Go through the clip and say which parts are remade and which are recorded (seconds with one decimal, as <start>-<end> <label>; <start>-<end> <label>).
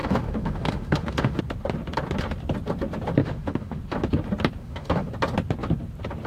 0.0-1.4 remade; 1.4-3.2 recorded; 3.2-3.8 remade; 3.8-4.6 recorded; 4.6-5.1 remade; 5.1-6.3 recorded